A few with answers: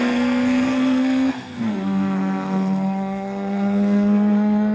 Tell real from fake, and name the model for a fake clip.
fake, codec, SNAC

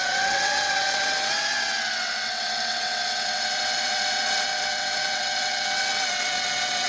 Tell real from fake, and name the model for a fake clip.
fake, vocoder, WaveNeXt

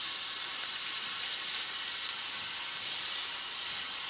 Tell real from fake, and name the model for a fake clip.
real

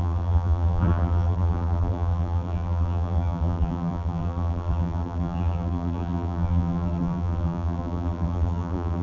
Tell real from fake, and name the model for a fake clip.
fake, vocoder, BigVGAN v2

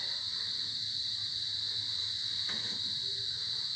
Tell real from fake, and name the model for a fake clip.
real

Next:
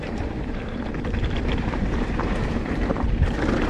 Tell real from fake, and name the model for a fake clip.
fake, vocoder, BigVGAN v2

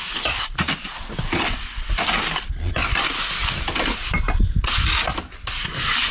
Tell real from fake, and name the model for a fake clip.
real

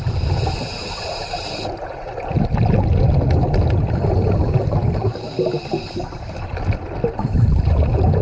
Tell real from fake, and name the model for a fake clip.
real